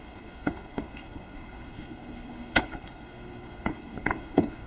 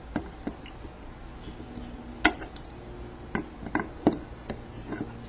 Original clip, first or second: second